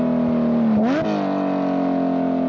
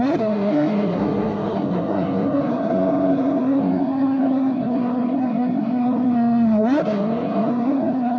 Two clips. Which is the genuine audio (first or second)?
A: first